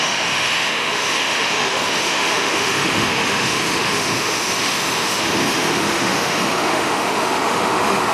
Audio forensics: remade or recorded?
remade